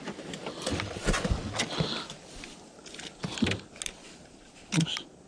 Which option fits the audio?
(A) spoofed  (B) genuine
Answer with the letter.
B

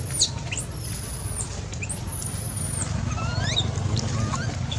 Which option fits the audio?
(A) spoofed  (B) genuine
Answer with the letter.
B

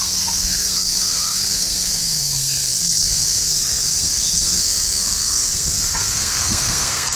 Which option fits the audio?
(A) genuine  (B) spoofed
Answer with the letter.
B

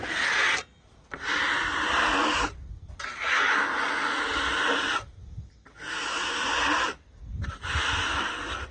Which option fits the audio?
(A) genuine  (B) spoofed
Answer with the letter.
A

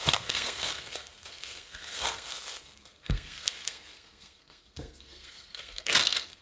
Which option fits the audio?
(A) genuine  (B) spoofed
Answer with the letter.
B